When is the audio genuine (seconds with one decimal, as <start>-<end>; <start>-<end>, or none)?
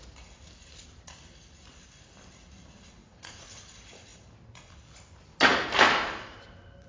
0.0-3.0; 3.6-6.9